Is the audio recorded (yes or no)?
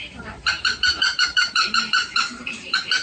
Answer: no